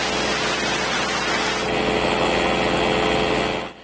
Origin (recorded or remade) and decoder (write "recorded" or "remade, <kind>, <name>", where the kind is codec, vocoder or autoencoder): recorded